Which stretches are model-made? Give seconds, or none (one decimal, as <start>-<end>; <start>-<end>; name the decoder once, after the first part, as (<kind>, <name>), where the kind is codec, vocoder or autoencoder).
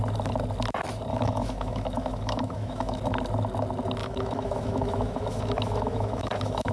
1.1-3.0 (autoencoder, DAC-VAE); 4.0-6.7